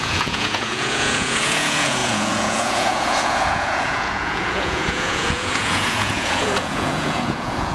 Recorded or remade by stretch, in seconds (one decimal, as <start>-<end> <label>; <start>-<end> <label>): 0.0-7.7 remade